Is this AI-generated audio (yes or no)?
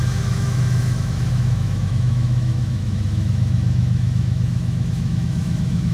yes